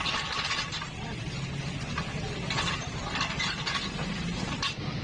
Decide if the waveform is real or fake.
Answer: real